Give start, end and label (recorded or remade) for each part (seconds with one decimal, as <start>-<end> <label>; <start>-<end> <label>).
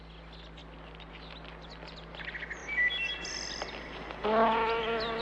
0.0-5.2 recorded